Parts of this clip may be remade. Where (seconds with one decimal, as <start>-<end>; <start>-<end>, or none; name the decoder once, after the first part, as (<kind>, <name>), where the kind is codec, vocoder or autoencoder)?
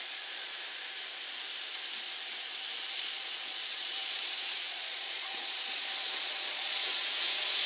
0.0-0.5 (vocoder, Vocos); 2.9-7.7